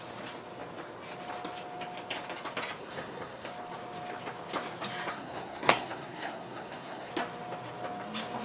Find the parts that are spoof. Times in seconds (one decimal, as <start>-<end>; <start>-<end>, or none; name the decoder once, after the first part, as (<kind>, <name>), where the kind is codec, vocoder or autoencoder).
2.8-3.5 (codec, SNAC); 5.1-7.1